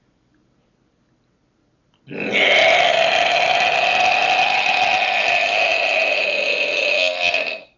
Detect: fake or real real